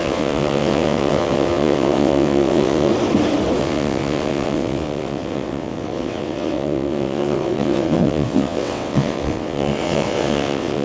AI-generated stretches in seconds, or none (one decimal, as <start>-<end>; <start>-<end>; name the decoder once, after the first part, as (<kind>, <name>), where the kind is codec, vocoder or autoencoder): 0.0-2.9 (vocoder, WaveNeXt); 3.6-10.8